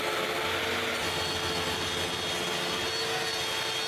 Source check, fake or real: real